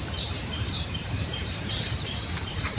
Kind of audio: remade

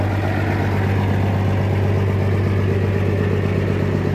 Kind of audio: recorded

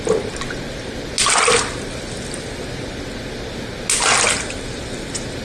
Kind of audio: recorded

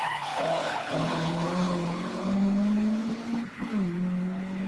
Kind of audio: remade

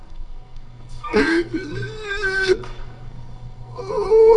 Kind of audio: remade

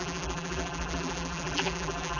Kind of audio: remade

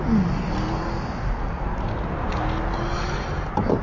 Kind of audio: recorded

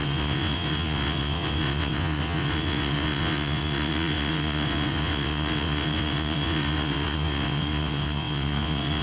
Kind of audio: remade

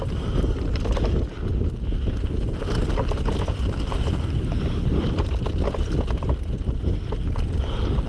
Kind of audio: recorded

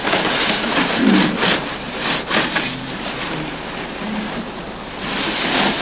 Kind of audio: recorded